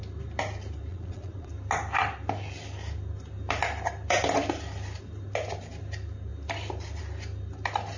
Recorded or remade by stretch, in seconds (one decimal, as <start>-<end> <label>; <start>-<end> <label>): 0.0-0.9 recorded; 0.9-1.5 remade; 1.5-8.0 recorded